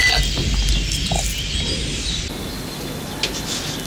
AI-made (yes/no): no